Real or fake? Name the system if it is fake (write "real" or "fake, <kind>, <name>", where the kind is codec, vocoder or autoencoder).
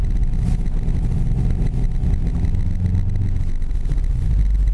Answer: real